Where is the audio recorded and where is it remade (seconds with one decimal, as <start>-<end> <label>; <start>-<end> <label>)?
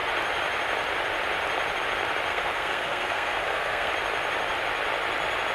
0.0-2.3 recorded; 2.3-3.9 remade; 3.9-5.5 recorded